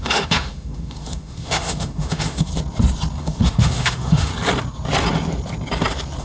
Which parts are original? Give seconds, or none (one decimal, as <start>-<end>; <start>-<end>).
2.5-3.2; 4.3-6.2